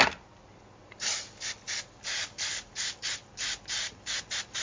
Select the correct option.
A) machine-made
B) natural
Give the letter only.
B